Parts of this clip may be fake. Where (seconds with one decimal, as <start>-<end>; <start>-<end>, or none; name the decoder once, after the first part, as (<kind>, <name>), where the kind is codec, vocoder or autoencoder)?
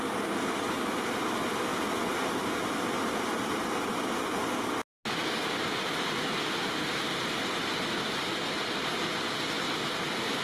none